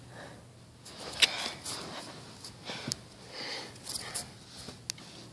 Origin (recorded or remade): recorded